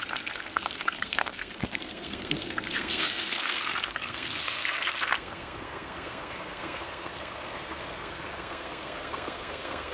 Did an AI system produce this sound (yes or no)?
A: yes